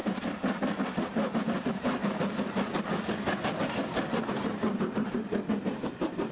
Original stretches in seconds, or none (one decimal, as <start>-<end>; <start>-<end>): 2.0-4.3